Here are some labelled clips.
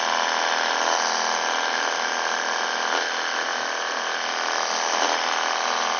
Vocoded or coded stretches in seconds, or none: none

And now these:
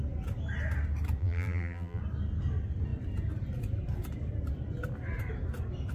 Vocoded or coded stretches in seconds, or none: 1.2-2.0 (vocoder, BigVGAN v2)

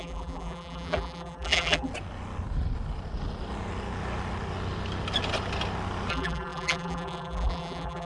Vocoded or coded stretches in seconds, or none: 0.0-1.9 (vocoder, BigVGAN v2); 6.1-8.1

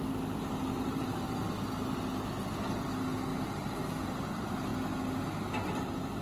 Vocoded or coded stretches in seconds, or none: 0.7-1.5 (vocoder, BigVGAN v2); 3.3-4.3

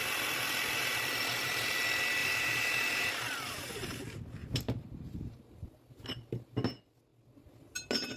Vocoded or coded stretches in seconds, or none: 2.2-3.1 (vocoder, BigVGAN v2); 4.4-5.4

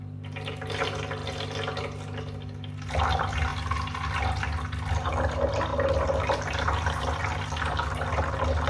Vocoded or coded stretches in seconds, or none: 0.0-1.2 (vocoder, BigVGAN v2); 2.7-3.5; 4.9-8.7